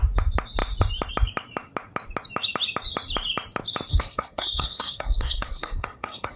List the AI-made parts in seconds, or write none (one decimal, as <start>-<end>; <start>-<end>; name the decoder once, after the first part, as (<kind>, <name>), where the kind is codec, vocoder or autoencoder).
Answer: 3.9-6.4 (codec, SNAC)